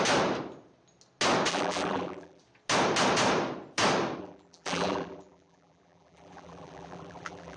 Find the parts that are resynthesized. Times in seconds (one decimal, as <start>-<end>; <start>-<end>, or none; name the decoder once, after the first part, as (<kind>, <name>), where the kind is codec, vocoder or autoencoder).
1.5-2.4 (vocoder, BigVGAN v2); 4.2-7.6